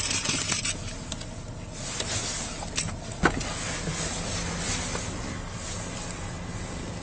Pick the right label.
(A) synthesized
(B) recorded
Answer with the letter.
B